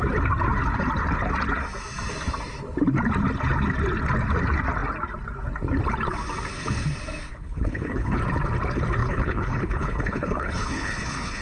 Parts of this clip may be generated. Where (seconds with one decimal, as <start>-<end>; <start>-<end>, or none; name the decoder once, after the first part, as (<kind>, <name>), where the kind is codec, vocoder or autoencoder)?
7.3-8.2 (codec, HILCodec); 9.0-11.4